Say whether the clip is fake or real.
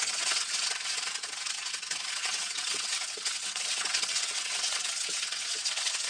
fake